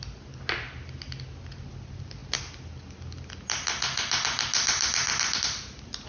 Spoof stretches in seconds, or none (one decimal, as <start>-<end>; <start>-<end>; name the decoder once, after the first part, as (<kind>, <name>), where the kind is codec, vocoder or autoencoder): none